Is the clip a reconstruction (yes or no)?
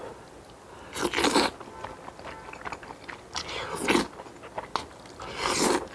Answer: no